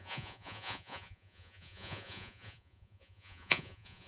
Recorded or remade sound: remade